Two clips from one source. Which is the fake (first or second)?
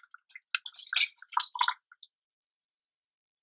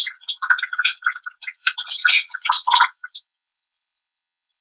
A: second